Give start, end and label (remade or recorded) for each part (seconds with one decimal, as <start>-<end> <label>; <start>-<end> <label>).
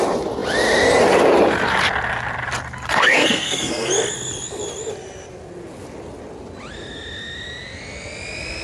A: 0.0-2.9 recorded; 2.9-3.9 remade; 3.9-8.6 recorded